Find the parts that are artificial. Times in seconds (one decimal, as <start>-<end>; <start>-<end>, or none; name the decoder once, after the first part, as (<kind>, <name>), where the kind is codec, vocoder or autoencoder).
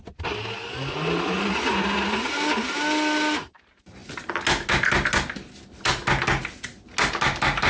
none